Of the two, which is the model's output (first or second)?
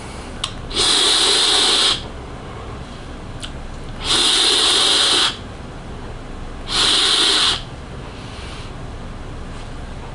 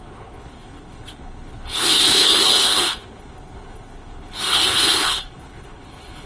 second